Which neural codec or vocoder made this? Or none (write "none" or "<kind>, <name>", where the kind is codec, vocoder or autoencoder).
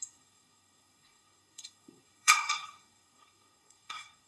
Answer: codec, SNAC